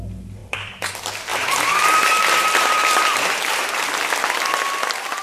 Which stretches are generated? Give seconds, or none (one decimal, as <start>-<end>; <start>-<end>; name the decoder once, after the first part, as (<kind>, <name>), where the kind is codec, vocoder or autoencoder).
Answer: 0.4-0.9 (vocoder, BigVGAN v2); 1.3-3.9